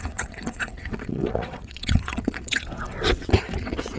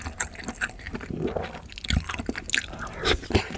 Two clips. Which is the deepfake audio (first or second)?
first